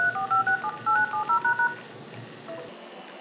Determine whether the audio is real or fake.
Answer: real